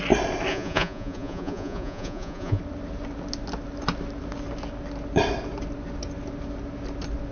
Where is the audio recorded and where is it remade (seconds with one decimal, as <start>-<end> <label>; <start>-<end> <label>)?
0.0-0.5 recorded; 0.5-2.6 remade; 2.6-7.3 recorded